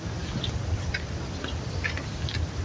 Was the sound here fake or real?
real